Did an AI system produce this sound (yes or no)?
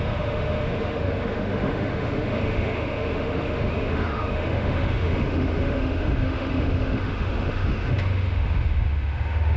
yes